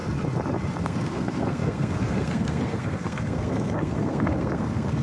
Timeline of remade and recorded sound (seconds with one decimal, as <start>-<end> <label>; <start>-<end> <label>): 0.0-0.8 recorded; 0.8-5.0 remade